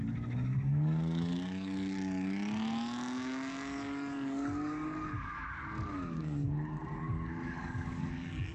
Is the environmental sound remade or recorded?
remade